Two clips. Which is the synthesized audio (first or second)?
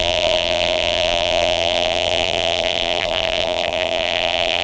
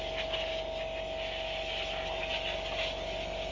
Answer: first